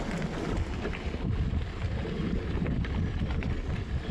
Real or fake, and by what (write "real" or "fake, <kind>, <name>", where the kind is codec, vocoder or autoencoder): real